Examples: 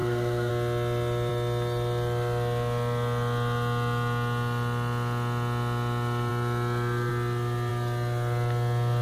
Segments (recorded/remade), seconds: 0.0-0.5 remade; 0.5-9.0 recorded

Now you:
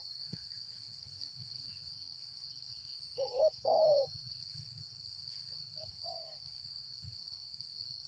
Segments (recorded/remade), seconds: 0.0-8.1 remade